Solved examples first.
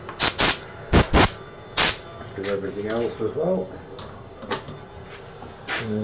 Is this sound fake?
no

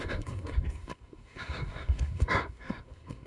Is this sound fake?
yes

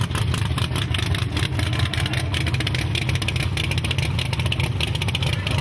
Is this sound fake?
no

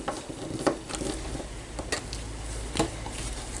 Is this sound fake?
no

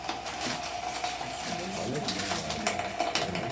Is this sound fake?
no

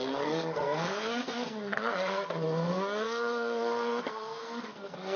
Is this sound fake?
yes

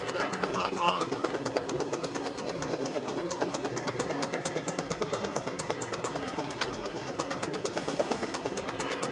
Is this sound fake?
yes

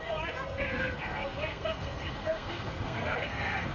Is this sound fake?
yes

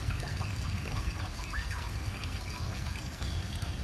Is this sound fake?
yes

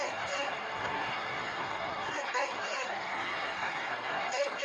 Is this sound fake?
yes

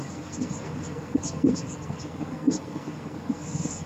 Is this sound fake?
yes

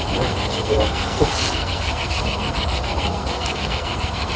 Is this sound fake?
yes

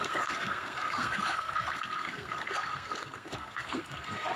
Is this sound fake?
yes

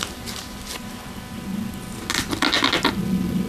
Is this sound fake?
no